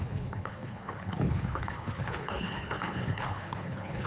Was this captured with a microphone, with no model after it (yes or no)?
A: no